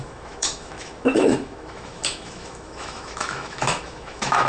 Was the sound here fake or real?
fake